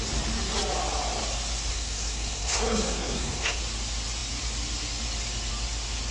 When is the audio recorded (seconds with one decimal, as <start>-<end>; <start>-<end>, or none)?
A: 0.0-1.7; 3.6-6.1

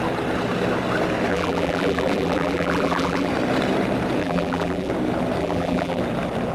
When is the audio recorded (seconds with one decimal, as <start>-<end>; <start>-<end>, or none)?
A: 0.0-1.3; 3.3-4.2; 4.9-5.4; 6.0-6.5

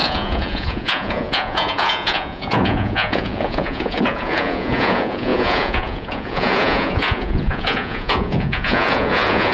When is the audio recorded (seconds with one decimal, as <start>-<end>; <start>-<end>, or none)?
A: none

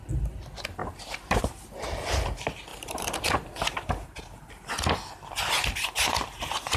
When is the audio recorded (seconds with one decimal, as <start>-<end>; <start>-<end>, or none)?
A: 0.0-0.8; 1.4-2.7; 4.5-6.8

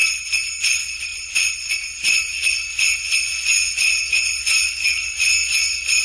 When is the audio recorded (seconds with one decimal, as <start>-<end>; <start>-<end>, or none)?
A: 0.0-6.0